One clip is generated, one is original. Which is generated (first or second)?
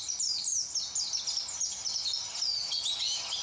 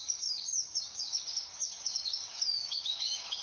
second